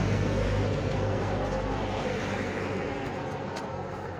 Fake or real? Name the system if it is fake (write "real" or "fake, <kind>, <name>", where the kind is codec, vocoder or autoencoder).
fake, codec, SNAC